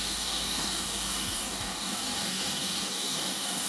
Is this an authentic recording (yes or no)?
no